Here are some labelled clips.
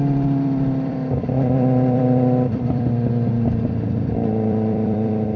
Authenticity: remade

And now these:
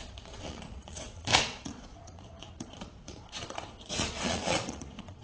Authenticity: remade